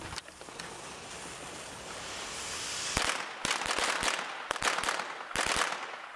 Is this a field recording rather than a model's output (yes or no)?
yes